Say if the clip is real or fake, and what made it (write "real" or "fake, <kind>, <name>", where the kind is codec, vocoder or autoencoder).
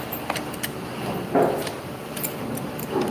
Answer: real